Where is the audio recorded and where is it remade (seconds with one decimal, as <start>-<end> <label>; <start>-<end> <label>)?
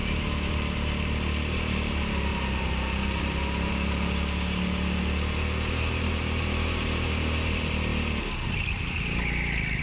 0.0-9.8 recorded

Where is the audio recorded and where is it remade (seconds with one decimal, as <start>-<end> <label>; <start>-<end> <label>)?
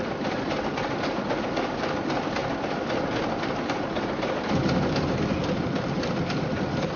0.0-7.0 recorded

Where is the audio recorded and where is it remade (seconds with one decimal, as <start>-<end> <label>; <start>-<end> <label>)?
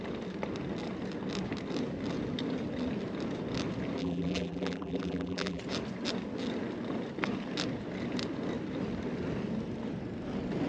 0.0-4.0 recorded; 4.0-5.6 remade; 5.6-10.7 recorded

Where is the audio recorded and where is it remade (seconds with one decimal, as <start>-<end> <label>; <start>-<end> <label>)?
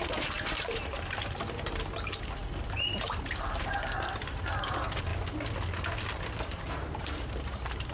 0.0-5.1 remade; 5.1-6.4 recorded; 6.4-7.9 remade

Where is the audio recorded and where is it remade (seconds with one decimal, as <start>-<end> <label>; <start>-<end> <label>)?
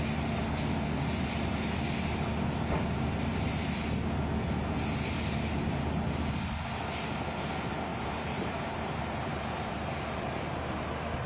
0.0-7.9 recorded; 7.9-10.9 remade; 10.9-11.3 recorded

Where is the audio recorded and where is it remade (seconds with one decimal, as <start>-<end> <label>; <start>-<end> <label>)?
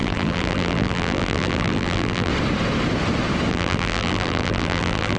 0.0-2.3 remade; 2.3-3.5 recorded; 3.5-5.2 remade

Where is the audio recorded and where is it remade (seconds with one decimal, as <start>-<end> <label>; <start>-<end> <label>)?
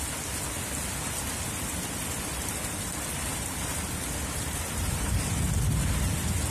0.0-3.7 remade; 3.7-4.3 recorded; 4.3-6.5 remade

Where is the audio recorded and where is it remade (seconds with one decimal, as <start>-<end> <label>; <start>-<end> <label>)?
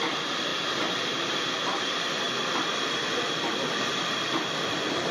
0.0-5.1 remade